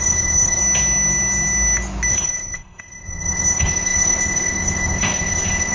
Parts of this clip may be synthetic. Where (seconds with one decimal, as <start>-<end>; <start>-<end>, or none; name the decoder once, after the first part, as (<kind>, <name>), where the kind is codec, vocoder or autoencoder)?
0.0-0.6 (codec, ZipCodec); 2.1-5.7